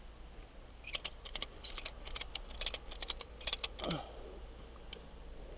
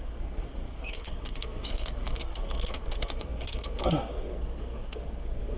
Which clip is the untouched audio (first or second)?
first